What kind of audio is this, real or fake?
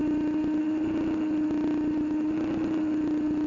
real